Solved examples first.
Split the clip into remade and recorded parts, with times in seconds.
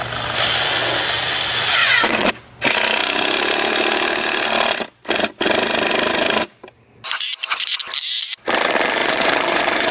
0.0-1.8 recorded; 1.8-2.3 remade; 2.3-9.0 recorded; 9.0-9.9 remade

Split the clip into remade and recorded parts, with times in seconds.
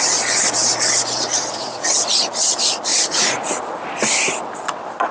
0.0-2.9 recorded; 2.9-3.5 remade; 3.5-5.1 recorded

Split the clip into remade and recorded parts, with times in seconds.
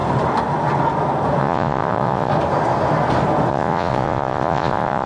0.0-1.4 recorded; 1.4-2.3 remade; 2.3-3.5 recorded; 3.5-5.1 remade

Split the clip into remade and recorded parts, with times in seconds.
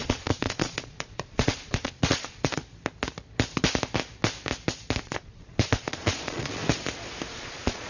0.0-2.6 remade; 2.6-5.0 recorded; 5.0-6.6 remade; 6.6-7.3 recorded; 7.3-7.9 remade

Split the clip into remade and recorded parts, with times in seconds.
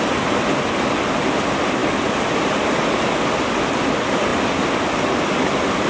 0.0-5.9 recorded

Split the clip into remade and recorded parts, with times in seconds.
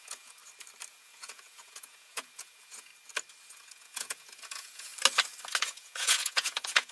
0.0-0.4 remade; 0.4-0.9 recorded; 0.9-2.9 remade; 2.9-3.4 recorded; 3.4-4.9 remade; 4.9-5.6 recorded; 5.6-6.9 remade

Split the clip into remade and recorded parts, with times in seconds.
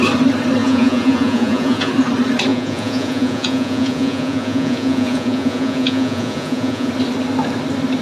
0.0-0.6 recorded; 0.6-1.9 remade; 1.9-2.5 recorded; 2.5-6.9 remade; 6.9-8.0 recorded